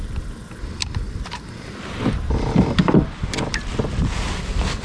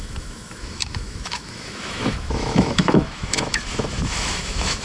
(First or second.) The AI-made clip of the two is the second